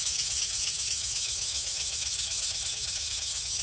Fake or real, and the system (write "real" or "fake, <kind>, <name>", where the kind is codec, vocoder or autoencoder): fake, autoencoder, DAC-VAE